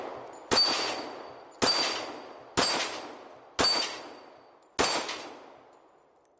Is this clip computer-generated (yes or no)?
no